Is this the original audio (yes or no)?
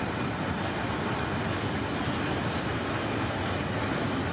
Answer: yes